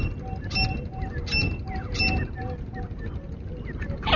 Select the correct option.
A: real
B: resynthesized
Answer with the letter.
A